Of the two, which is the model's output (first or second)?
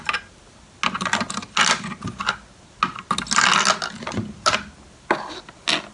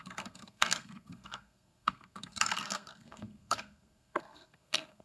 second